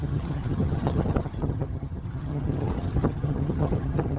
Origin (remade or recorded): remade